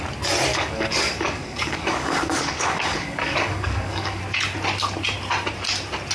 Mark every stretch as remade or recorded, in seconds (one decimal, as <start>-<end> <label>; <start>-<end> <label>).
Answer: 0.0-0.5 recorded; 0.5-4.2 remade; 4.2-6.1 recorded